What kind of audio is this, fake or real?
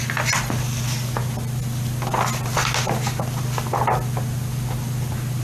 real